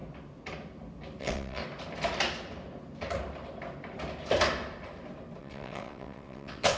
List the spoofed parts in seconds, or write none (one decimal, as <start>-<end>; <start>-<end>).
1.2-1.6; 5.4-6.8